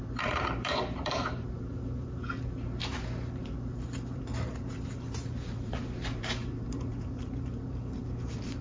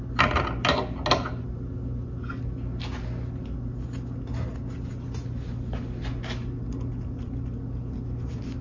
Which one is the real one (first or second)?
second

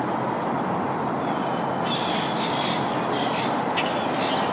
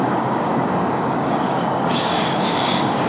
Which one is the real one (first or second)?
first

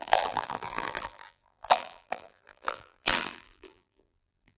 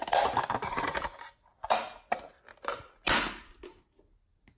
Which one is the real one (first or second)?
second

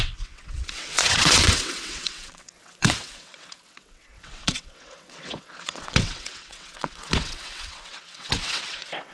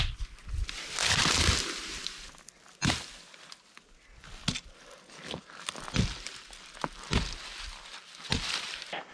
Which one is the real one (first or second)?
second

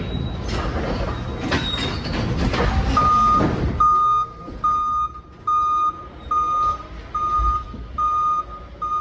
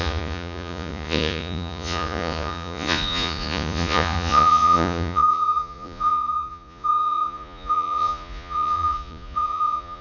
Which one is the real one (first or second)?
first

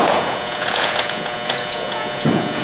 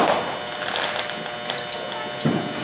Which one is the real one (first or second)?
second